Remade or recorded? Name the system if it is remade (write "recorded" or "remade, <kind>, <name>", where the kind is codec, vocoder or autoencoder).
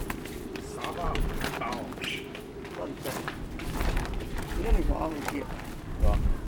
recorded